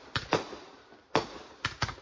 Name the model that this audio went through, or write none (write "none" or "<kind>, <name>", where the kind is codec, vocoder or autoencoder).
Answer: none